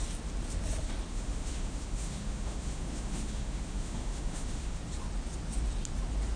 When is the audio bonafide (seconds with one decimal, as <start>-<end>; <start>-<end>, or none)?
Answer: 0.0-1.1; 4.8-6.4